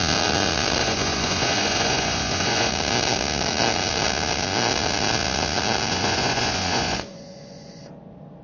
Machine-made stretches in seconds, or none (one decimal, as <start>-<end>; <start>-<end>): 0.8-2.7; 5.9-7.8